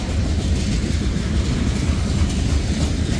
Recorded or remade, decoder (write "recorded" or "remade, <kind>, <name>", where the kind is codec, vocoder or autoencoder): recorded